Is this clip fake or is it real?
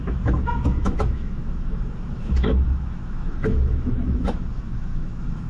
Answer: fake